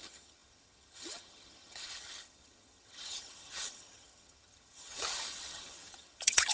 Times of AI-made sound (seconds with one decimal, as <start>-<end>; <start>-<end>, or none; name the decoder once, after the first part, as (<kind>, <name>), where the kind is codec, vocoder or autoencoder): 0.0-6.5 (vocoder, HiFi-GAN)